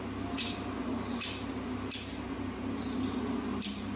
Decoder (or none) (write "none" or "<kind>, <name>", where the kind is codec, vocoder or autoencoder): none